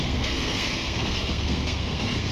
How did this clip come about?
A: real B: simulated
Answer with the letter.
B